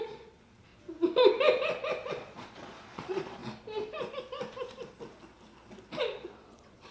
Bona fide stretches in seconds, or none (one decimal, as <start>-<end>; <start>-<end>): 0.7-2.1; 3.4-6.0